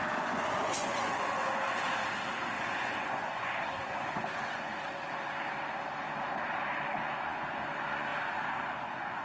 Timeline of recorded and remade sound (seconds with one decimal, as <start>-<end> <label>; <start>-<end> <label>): 0.0-2.0 remade; 2.0-2.6 recorded; 2.6-4.7 remade; 4.7-6.9 recorded; 6.9-8.1 remade; 8.1-8.7 recorded; 8.7-9.2 remade